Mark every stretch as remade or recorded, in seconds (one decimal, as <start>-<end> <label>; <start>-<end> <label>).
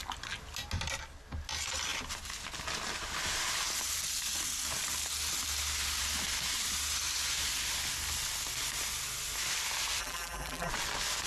0.0-10.0 recorded; 10.0-10.7 remade; 10.7-11.3 recorded